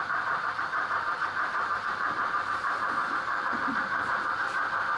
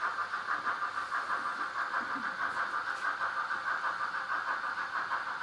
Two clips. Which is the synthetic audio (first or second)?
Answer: first